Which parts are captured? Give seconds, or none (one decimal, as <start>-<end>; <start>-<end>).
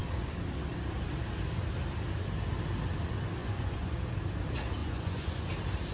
0.0-3.4; 4.0-4.8; 5.5-5.9